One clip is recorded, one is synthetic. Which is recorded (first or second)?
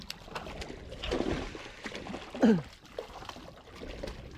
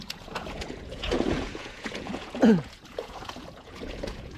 first